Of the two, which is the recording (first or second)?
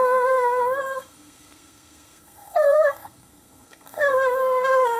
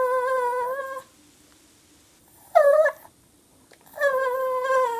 second